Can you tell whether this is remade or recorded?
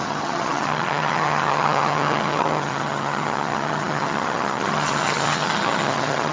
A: remade